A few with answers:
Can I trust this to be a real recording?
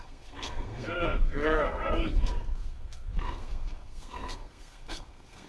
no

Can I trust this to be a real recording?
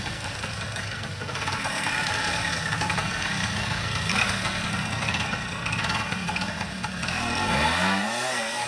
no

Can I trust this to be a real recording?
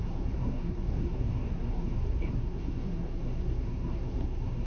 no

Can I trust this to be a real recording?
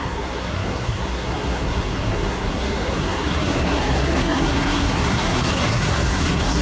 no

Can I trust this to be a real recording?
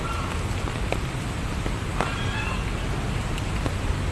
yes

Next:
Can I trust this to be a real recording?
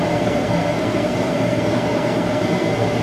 no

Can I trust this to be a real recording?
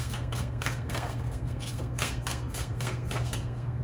no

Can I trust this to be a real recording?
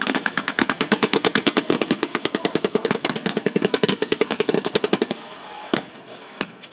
no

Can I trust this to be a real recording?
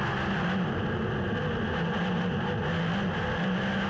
yes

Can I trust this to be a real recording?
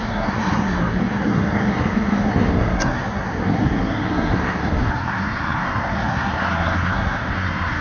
no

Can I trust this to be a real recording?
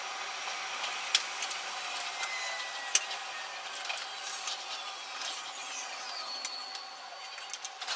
yes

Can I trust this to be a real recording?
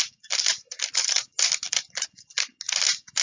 yes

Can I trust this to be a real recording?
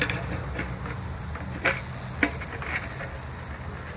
yes